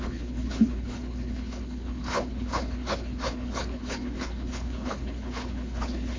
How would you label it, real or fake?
fake